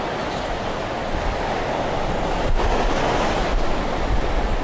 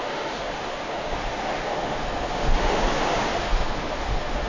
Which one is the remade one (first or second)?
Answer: second